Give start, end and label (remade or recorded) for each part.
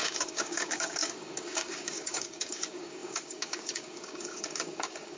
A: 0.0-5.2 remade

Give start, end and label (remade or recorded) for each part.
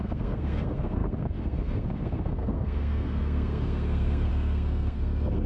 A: 0.0-5.5 remade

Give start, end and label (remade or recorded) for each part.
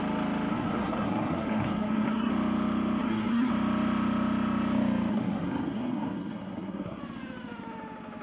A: 0.0-0.5 recorded; 0.5-2.3 remade; 2.3-3.0 recorded; 3.0-3.5 remade; 3.5-5.1 recorded; 5.1-7.0 remade; 7.0-8.2 recorded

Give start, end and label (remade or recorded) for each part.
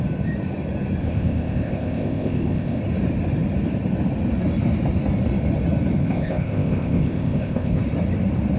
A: 0.0-1.0 recorded; 1.0-2.8 remade; 2.8-6.0 recorded; 6.0-7.8 remade; 7.8-8.6 recorded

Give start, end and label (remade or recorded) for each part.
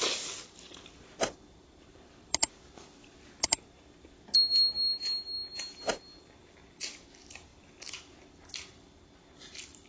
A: 0.0-9.9 recorded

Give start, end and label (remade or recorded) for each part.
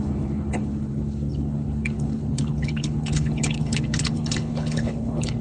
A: 0.0-5.4 remade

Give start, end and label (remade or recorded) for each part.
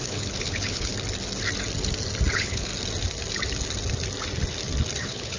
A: 0.0-0.9 remade; 0.9-2.3 recorded; 2.3-2.7 remade; 2.7-5.0 recorded; 5.0-5.4 remade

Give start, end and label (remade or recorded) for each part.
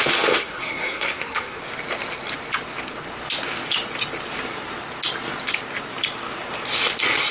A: 0.0-0.4 recorded; 0.4-1.6 remade; 1.6-7.3 recorded